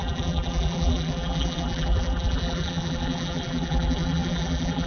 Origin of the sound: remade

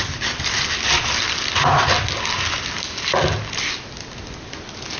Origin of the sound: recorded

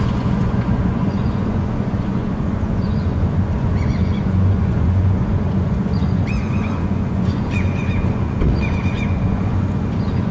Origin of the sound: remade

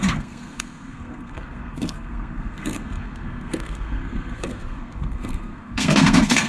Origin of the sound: remade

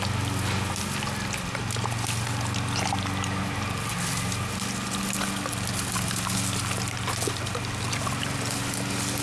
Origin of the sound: recorded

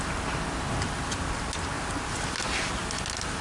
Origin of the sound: recorded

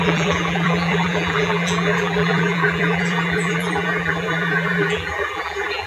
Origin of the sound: remade